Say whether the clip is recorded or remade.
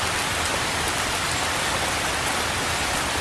recorded